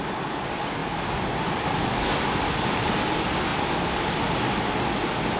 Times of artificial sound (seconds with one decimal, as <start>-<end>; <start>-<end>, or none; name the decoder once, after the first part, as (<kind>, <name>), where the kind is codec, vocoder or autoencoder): 0.8-3.0 (vocoder, BigVGAN v2); 3.5-4.1